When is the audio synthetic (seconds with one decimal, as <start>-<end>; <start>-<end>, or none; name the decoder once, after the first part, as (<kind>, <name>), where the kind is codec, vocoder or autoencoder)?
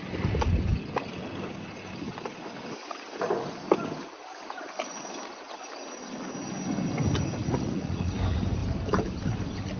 7.4-8.1 (vocoder, Vocos)